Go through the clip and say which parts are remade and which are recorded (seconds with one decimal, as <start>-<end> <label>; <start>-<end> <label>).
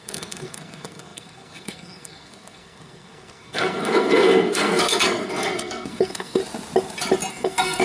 0.0-6.4 remade; 6.4-7.3 recorded; 7.3-7.8 remade